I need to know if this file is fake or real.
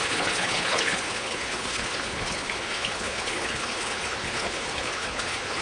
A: fake